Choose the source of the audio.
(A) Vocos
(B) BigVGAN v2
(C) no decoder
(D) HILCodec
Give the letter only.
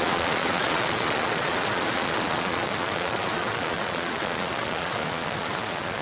A